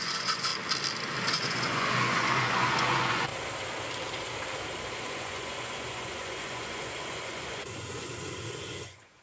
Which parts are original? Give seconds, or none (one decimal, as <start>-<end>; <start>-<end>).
0.5-1.3; 3.3-5.0

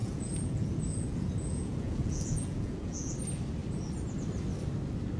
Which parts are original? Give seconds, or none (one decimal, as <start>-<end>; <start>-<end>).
3.1-5.2

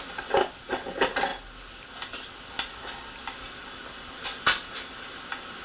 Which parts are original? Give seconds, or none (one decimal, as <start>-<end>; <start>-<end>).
0.0-5.6

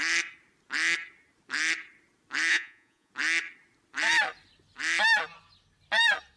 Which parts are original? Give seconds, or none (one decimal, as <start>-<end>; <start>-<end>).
0.0-2.5; 3.1-6.4

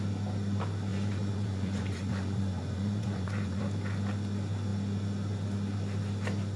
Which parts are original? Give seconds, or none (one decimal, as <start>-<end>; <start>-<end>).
0.0-0.9; 3.6-6.6

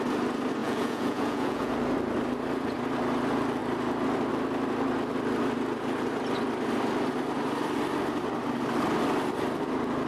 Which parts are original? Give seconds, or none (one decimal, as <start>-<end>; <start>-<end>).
0.0-0.6; 1.7-10.1

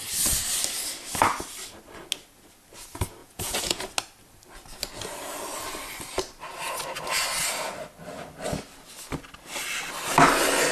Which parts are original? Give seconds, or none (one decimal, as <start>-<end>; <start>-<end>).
0.0-3.2; 3.8-10.7